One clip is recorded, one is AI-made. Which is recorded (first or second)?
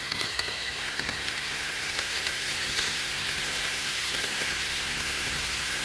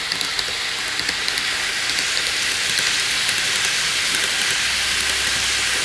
second